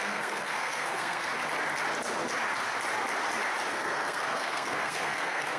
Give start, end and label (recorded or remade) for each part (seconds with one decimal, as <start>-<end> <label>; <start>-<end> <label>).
0.0-1.3 remade; 1.3-3.7 recorded; 3.7-5.6 remade